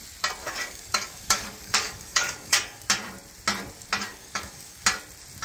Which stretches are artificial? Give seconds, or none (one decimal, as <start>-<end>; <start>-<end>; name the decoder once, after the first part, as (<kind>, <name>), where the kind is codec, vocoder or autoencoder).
0.4-2.8 (codec, DAC); 4.1-4.8